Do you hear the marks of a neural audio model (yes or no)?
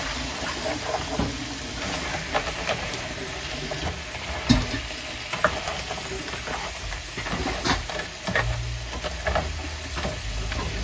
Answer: no